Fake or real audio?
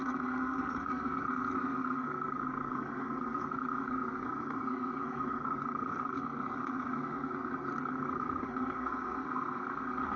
fake